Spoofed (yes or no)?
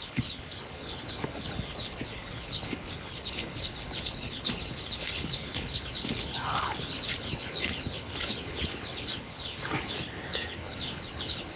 yes